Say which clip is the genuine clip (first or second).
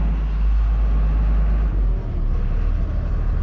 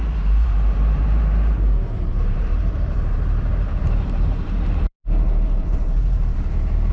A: first